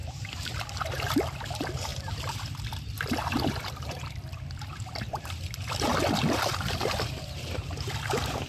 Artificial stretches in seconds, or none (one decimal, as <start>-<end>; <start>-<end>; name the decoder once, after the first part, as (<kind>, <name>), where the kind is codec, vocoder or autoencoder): 0.0-0.5 (vocoder, BigVGAN v2); 1.9-5.4